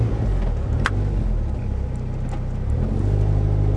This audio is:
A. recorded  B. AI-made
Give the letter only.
A